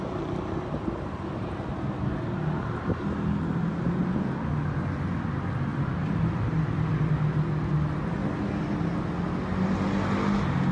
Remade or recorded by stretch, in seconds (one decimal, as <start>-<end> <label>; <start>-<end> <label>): 0.0-5.7 recorded; 5.7-6.4 remade; 6.4-10.7 recorded